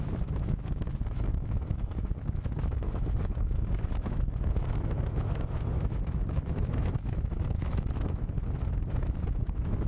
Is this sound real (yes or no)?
no